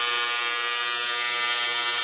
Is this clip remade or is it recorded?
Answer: recorded